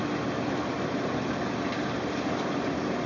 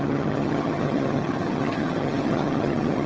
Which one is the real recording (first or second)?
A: first